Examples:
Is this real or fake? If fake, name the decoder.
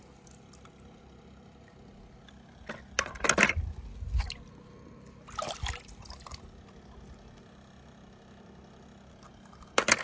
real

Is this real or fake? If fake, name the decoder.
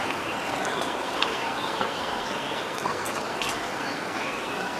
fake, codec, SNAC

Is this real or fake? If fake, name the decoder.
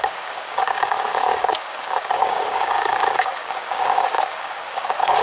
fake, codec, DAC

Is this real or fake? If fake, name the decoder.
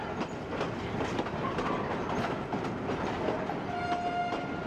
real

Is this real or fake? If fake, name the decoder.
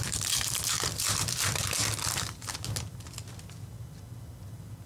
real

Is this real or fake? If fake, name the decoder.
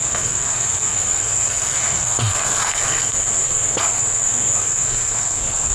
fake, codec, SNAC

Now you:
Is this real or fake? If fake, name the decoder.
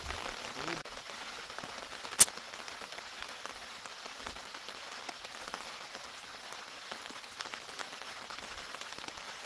real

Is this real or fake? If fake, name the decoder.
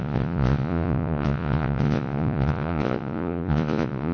fake, vocoder, Vocos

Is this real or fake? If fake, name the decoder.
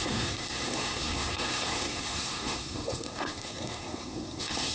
fake, codec, SNAC